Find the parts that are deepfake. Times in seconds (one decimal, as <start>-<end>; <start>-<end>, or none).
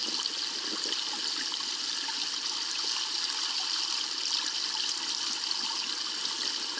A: none